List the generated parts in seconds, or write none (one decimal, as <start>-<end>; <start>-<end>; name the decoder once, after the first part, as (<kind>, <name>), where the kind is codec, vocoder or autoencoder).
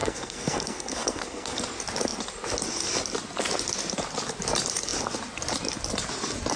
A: 0.0-1.6 (codec, SNAC)